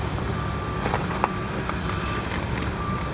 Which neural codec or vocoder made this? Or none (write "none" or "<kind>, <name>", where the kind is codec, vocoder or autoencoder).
vocoder, BigVGAN v2